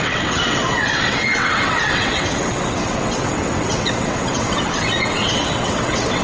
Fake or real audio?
fake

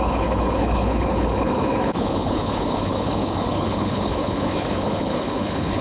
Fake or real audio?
fake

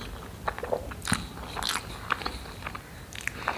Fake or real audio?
real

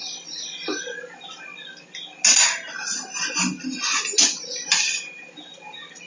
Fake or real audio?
real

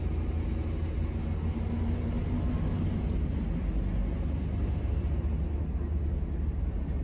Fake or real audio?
real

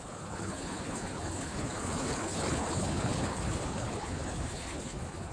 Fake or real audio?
fake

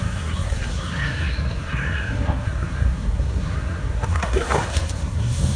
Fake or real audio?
fake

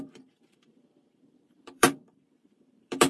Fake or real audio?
fake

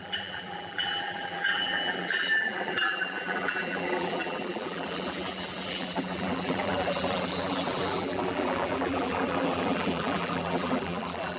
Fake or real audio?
fake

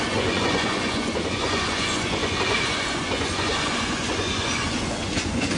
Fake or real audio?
fake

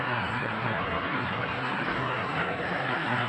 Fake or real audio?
fake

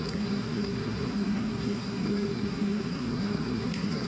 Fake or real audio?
fake